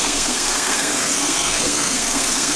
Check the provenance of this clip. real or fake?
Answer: fake